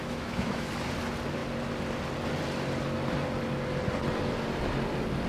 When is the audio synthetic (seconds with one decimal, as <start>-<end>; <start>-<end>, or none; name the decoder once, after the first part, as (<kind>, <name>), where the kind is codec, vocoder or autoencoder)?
0.0-0.7 (autoencoder, DAC-VAE)